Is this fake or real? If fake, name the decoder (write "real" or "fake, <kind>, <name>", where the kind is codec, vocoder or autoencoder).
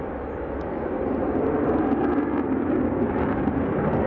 real